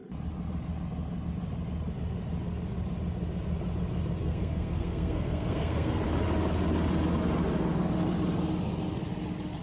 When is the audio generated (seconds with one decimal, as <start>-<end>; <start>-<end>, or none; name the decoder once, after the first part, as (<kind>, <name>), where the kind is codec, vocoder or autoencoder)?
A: 4.2-6.0 (codec, SNAC)